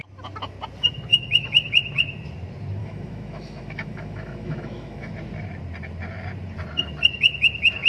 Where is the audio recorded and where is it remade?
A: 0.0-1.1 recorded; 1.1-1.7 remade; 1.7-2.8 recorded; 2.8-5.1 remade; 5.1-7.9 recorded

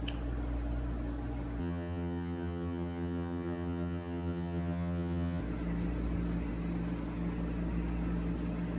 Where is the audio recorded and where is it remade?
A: 0.0-1.6 recorded; 1.6-5.4 remade; 5.4-8.8 recorded

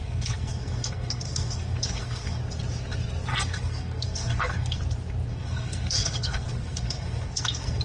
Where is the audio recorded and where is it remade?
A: 0.0-2.4 remade; 2.4-3.3 recorded; 3.3-4.8 remade; 4.8-5.3 recorded; 5.3-7.8 remade

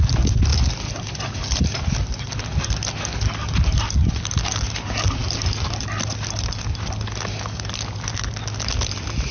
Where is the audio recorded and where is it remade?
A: 0.0-9.3 recorded

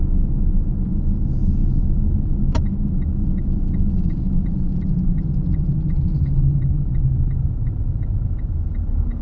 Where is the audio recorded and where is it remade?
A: 0.0-9.2 recorded

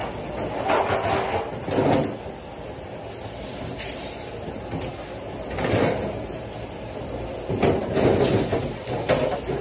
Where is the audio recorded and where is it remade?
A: 0.0-3.5 recorded; 3.5-4.1 remade; 4.1-9.6 recorded